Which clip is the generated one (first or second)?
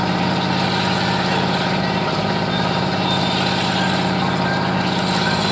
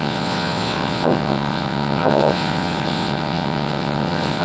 second